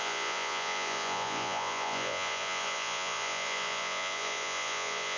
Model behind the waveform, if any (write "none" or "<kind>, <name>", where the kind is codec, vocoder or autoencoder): vocoder, Vocos